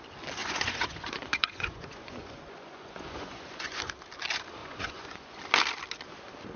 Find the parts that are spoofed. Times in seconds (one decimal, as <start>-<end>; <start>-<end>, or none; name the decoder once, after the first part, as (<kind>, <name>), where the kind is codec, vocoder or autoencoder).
0.4-3.8 (vocoder, Vocos); 4.6-5.4